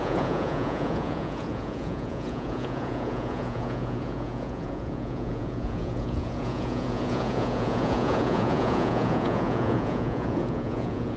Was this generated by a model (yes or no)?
yes